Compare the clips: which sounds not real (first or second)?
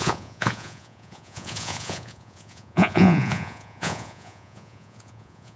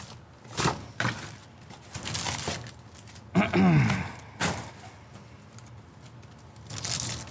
first